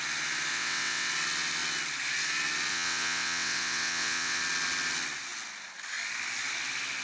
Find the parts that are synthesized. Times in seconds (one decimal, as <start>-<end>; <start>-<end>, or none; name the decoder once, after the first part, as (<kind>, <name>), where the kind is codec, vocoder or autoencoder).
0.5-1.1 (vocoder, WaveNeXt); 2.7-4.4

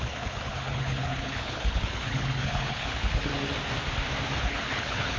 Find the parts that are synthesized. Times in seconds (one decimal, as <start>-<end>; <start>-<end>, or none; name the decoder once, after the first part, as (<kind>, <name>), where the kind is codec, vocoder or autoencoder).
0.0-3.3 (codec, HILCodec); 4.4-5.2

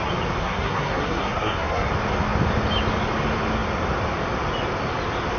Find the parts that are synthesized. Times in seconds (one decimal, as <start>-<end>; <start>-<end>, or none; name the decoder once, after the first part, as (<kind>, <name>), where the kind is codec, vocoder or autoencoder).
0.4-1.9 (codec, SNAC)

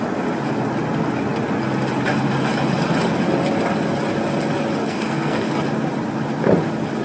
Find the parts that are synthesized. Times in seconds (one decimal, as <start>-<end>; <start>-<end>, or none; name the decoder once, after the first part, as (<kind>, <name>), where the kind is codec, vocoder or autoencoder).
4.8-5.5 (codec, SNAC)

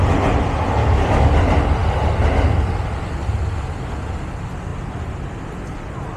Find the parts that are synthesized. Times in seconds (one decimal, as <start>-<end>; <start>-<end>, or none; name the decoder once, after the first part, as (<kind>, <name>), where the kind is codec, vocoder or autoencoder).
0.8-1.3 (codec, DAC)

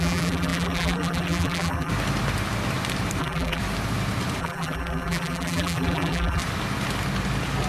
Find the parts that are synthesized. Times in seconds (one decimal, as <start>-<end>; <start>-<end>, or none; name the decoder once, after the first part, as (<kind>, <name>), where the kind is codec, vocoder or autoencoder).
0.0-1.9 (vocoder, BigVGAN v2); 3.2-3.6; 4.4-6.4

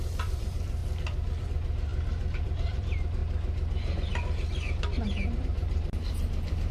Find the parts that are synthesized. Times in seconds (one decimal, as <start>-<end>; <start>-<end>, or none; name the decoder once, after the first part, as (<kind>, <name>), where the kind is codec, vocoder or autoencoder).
0.0-0.8 (vocoder, BigVGAN v2); 1.4-1.9; 2.4-3.2; 5.4-6.7

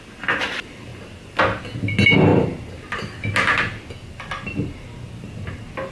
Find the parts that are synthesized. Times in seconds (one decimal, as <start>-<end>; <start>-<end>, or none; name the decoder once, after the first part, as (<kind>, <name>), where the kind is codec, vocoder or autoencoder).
none